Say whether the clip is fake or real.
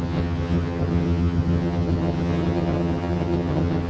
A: fake